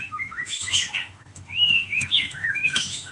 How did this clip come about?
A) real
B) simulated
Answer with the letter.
B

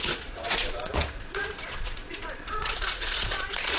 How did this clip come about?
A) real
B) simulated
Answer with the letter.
B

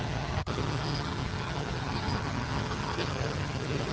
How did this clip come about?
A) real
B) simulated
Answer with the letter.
B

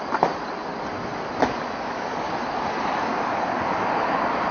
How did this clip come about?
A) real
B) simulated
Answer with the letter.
A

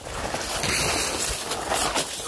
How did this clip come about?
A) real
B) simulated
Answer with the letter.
A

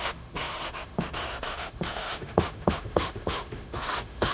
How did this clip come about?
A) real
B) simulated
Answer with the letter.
B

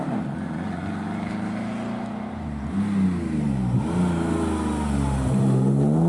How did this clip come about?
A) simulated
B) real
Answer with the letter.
B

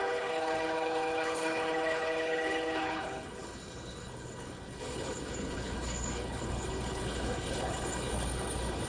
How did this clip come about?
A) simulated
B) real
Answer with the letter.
A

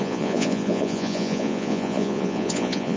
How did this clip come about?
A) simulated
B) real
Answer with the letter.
A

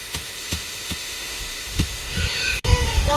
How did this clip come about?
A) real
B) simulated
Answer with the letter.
B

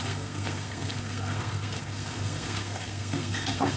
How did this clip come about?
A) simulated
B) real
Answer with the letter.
A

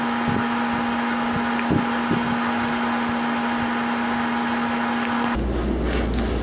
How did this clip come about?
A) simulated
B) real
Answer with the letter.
B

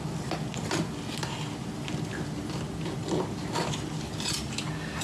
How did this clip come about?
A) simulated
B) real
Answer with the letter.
B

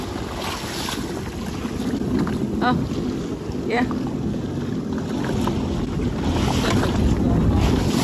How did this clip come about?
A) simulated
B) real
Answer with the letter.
B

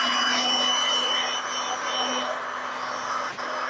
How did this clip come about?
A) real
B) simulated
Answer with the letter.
A